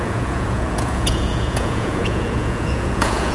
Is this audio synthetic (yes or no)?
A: yes